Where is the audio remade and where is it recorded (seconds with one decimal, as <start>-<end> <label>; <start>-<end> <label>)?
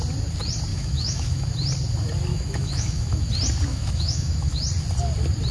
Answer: 0.0-0.7 recorded; 0.7-1.5 remade; 1.5-2.3 recorded; 2.3-3.3 remade; 3.3-3.7 recorded; 3.7-4.6 remade; 4.6-5.5 recorded